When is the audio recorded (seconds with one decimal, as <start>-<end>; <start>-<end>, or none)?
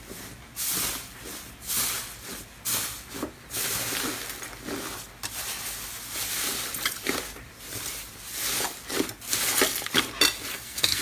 0.0-10.5